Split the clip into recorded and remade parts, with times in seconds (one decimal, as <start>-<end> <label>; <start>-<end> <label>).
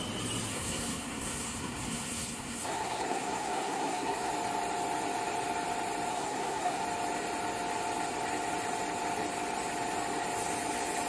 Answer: 0.0-0.5 recorded; 0.5-4.3 remade; 4.3-6.1 recorded; 6.1-6.8 remade; 6.8-11.1 recorded